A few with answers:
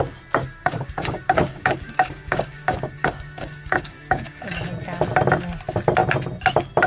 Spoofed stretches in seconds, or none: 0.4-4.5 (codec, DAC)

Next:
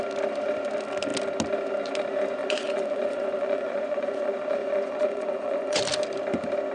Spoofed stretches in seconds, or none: 2.4-5.8 (vocoder, Vocos)